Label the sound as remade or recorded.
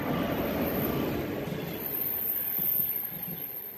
recorded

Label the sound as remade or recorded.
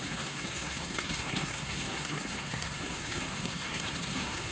remade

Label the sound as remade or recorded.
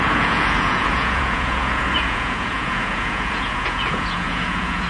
remade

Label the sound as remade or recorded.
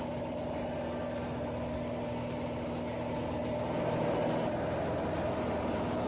recorded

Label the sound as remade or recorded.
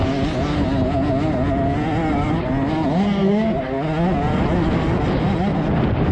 recorded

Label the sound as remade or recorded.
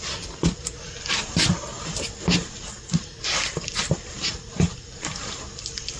recorded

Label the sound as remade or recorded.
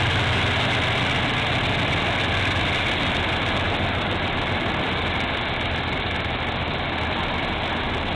recorded